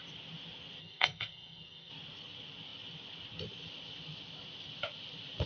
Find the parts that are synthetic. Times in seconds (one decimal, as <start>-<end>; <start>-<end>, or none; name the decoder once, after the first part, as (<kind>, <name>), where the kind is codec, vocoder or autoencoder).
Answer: 0.8-1.9 (codec, SNAC)